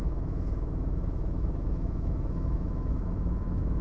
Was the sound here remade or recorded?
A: remade